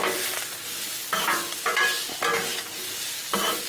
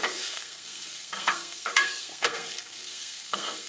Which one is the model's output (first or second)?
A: second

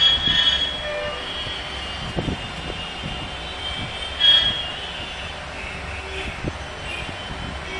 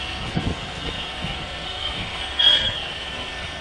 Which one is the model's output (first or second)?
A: second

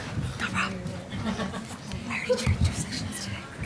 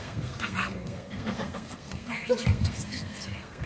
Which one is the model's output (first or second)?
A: second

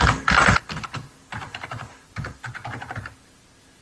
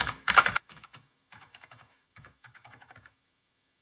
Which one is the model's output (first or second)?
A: second